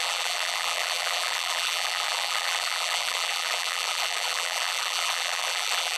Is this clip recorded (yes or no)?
no